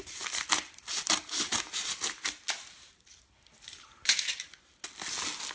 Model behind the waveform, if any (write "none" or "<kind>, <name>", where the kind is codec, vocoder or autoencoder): none